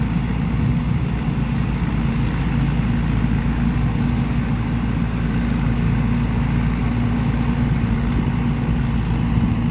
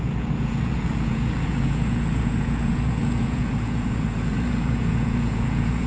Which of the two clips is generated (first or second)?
second